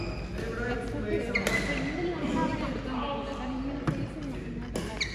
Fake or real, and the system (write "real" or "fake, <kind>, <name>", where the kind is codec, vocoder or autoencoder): real